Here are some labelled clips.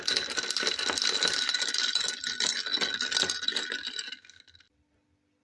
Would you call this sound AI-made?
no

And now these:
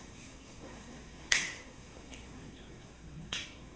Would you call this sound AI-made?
yes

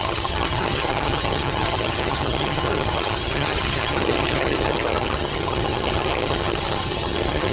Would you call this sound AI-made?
yes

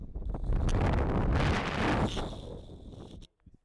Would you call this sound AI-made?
no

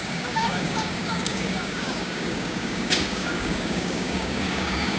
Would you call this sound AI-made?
yes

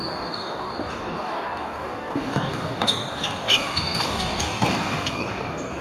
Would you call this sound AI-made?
yes